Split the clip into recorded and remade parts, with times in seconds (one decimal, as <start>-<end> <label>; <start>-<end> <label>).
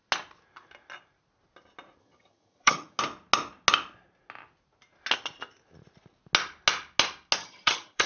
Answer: 0.0-2.0 recorded; 2.0-3.0 remade; 3.0-7.4 recorded; 7.4-8.1 remade